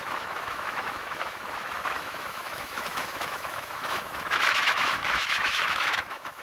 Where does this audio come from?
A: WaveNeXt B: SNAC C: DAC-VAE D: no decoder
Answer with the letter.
C